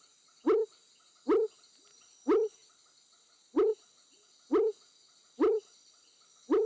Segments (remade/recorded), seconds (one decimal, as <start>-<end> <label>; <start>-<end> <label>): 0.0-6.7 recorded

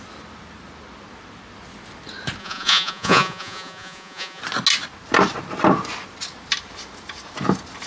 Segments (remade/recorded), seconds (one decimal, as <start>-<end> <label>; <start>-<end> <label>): 0.0-2.4 recorded; 2.4-4.4 remade; 4.4-7.9 recorded

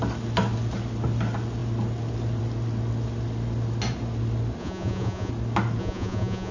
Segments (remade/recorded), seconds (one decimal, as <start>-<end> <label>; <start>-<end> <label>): 0.0-4.6 recorded; 4.6-5.3 remade; 5.3-5.8 recorded; 5.8-6.5 remade

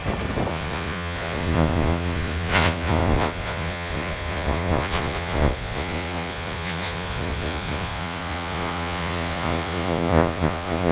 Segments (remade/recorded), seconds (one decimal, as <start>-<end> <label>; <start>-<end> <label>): 0.0-0.5 recorded; 0.5-10.9 remade

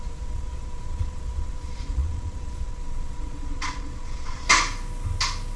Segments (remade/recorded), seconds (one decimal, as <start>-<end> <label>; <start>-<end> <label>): 0.0-4.5 remade; 4.5-5.6 recorded

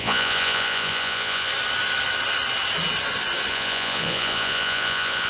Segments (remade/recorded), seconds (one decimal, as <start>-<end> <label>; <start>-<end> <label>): 0.0-1.5 remade; 1.5-3.5 recorded; 3.5-5.3 remade

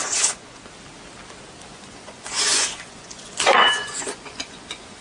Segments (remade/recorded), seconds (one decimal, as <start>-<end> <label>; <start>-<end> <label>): 0.0-0.6 remade; 0.6-1.7 recorded; 1.7-5.0 remade

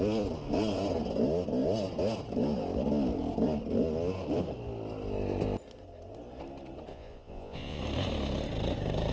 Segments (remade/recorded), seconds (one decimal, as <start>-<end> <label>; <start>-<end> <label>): 0.0-6.9 recorded; 6.9-7.8 remade; 7.8-9.1 recorded